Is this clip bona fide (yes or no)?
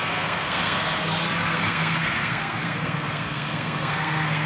no